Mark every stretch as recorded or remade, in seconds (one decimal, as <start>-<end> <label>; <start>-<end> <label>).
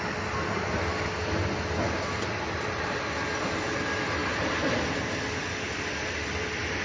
0.0-4.2 recorded; 4.2-4.8 remade; 4.8-6.8 recorded